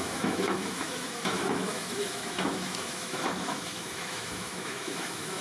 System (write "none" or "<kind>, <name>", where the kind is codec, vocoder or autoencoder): autoencoder, DAC-VAE